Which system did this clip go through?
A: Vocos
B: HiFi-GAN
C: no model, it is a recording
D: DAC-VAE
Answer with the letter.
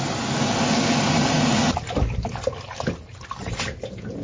C